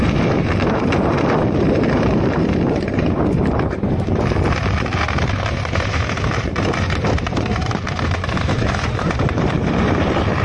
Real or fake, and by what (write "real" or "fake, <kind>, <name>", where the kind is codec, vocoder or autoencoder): fake, vocoder, BigVGAN v2